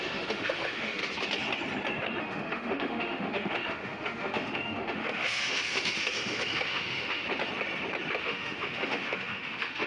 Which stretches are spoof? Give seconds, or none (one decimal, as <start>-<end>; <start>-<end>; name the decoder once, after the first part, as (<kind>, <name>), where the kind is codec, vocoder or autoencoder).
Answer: 0.0-1.0 (autoencoder, DAC-VAE); 2.2-7.2; 8.2-9.9